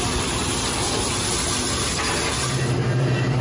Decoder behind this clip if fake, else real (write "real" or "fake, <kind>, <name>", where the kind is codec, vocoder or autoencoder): real